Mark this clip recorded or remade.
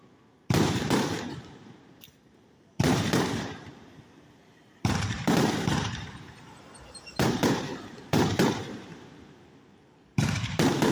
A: remade